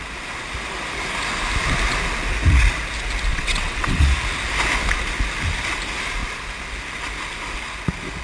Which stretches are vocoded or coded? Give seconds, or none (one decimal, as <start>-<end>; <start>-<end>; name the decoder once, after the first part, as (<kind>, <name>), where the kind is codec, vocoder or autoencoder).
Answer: 3.3-4.1 (vocoder, WaveNeXt)